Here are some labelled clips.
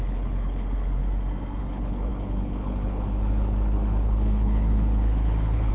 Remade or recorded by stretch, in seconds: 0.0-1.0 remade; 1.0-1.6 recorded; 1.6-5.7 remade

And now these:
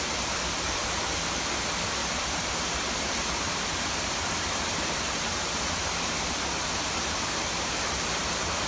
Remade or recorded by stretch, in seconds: 0.0-2.0 recorded; 2.0-3.8 remade; 3.8-4.2 recorded; 4.2-7.8 remade; 7.8-8.7 recorded

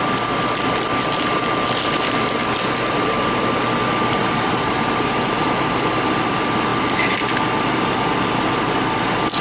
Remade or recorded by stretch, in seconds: 0.0-4.2 recorded; 4.2-5.8 remade; 5.8-9.4 recorded

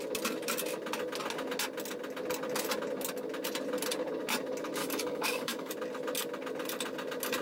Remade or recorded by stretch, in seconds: 0.0-4.8 recorded; 4.8-5.7 remade; 5.7-7.4 recorded

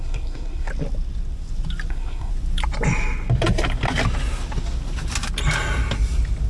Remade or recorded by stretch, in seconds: 0.0-0.7 remade; 0.7-1.9 recorded; 1.9-2.3 remade; 2.3-6.5 recorded

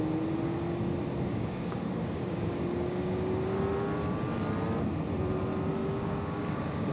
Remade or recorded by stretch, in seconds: 0.0-1.3 recorded; 1.3-3.6 remade; 3.6-5.8 recorded; 5.8-6.9 remade

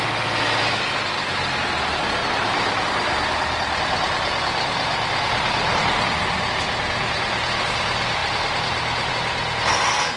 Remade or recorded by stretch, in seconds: 0.0-2.2 recorded; 2.2-2.8 remade; 2.8-8.2 recorded; 8.2-9.1 remade; 9.1-10.2 recorded